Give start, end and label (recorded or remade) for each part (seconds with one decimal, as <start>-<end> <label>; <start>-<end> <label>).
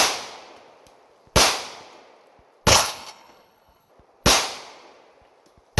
0.0-2.7 recorded; 2.7-3.9 remade; 3.9-5.8 recorded